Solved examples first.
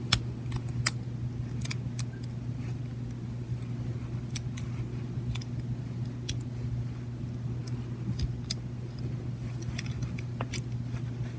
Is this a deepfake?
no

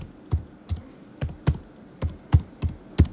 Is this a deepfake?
no